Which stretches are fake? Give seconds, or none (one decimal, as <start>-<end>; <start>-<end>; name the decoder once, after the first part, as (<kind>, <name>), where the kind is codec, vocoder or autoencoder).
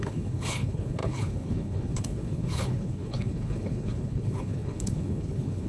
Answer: 0.0-5.7 (codec, HILCodec)